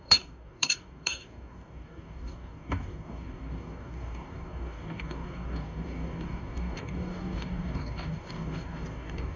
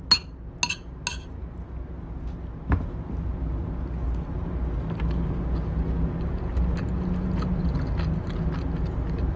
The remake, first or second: first